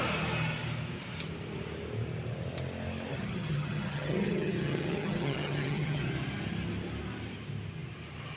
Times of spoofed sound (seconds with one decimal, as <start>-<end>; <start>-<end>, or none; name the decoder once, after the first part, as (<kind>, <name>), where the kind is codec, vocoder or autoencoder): 3.1-6.0 (vocoder, HiFi-GAN)

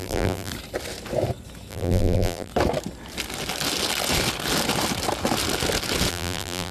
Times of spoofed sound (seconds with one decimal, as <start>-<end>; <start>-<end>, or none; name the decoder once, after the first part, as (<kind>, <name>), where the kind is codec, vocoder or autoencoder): 0.0-0.5 (vocoder, BigVGAN v2); 1.7-2.5; 6.1-6.7

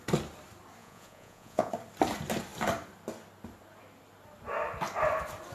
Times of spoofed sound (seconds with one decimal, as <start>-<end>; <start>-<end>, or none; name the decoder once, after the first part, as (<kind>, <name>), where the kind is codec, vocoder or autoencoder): 0.8-1.7 (vocoder, Vocos)

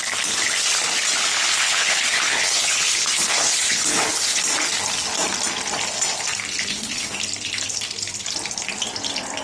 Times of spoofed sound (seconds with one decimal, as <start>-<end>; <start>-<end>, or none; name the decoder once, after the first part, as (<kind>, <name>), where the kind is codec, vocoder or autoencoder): 1.5-4.4 (codec, HILCodec); 6.7-7.2

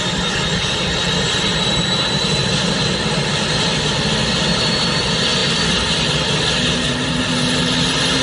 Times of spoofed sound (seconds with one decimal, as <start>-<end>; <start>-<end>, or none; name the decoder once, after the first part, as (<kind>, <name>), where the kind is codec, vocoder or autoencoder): none